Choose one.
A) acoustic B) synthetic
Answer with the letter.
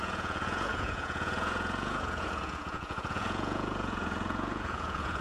B